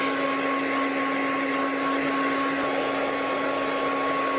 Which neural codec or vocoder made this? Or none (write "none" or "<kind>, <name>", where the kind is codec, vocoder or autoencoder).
none